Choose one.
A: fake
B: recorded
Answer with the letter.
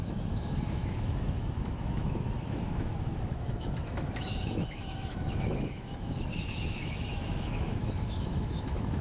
A